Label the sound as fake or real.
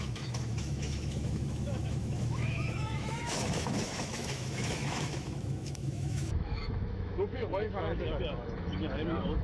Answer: fake